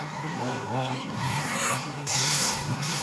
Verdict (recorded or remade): remade